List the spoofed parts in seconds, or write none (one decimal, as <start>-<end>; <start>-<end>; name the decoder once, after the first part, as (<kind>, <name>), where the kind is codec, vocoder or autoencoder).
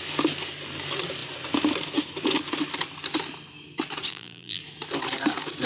4.1-4.6 (vocoder, BigVGAN v2)